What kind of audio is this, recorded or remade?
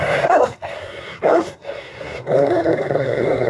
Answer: remade